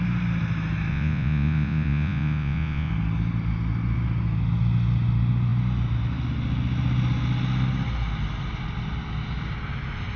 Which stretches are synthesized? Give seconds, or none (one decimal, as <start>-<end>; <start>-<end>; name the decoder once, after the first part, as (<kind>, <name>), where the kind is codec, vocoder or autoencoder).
0.9-2.9 (vocoder, Vocos)